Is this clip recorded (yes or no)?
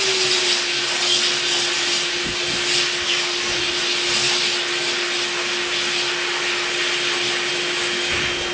yes